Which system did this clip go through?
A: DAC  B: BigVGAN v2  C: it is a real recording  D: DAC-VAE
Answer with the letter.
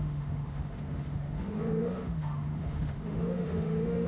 D